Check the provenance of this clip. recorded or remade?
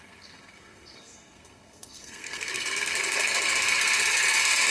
remade